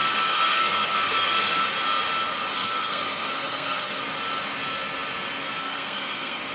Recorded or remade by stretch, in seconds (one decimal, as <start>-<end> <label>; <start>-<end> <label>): 0.0-1.6 remade; 1.6-2.5 recorded; 2.5-4.0 remade; 4.0-5.6 recorded; 5.6-6.5 remade